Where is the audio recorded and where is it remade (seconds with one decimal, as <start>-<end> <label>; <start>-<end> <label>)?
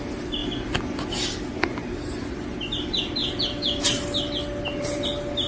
0.0-3.2 recorded; 3.2-3.8 remade; 3.8-5.5 recorded